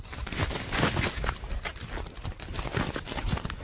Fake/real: real